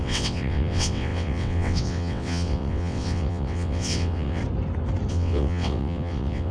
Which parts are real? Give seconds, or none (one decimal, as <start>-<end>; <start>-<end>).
4.4-5.1